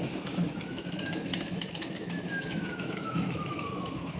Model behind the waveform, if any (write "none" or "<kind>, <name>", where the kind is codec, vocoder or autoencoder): autoencoder, DAC-VAE